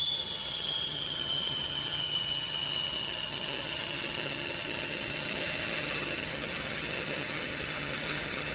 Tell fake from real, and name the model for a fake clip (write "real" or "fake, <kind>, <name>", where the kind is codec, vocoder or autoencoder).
fake, vocoder, HiFi-GAN